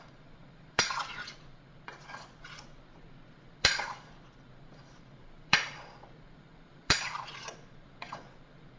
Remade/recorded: remade